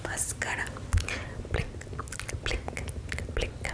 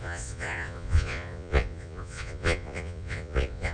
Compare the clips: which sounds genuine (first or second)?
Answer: first